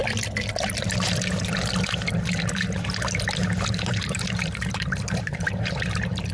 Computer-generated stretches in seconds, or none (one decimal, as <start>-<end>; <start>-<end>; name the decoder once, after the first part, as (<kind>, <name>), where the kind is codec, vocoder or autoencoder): 3.4-6.3 (vocoder, BigVGAN v2)

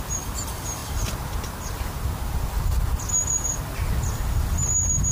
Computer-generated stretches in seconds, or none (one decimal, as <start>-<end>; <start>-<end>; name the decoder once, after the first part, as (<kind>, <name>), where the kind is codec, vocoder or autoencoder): 0.8-3.9 (vocoder, BigVGAN v2)

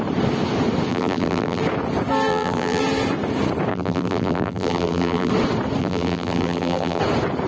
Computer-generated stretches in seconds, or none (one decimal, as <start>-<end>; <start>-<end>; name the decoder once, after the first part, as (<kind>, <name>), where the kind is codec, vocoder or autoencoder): 0.9-1.6 (vocoder, BigVGAN v2); 2.3-2.8; 3.7-5.3; 5.8-7.0